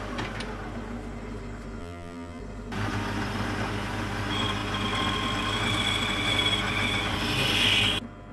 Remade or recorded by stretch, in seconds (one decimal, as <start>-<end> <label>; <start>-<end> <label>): 0.0-1.8 recorded; 1.8-2.4 remade; 2.4-8.3 recorded